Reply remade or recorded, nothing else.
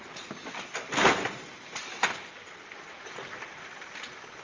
remade